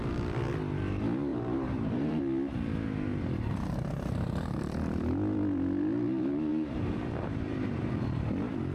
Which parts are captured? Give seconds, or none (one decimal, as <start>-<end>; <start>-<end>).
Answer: 0.0-1.3; 2.2-6.5; 7.9-8.7

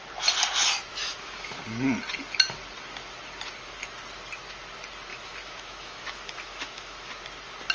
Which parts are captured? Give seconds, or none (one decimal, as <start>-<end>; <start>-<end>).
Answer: 0.0-0.9; 1.6-5.1; 7.1-7.7

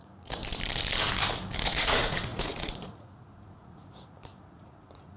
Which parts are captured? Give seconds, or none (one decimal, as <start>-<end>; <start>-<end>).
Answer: 0.4-1.6

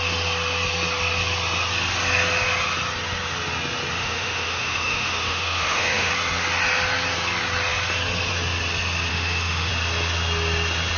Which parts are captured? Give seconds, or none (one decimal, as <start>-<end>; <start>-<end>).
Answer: 0.0-4.0; 6.1-9.1; 9.7-11.0

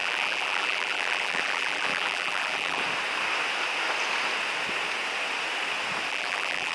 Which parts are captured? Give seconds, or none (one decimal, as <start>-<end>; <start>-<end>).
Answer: 2.8-6.1

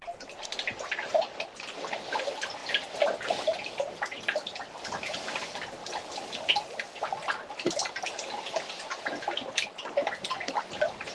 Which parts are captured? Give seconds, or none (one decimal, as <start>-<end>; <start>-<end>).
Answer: 0.0-11.1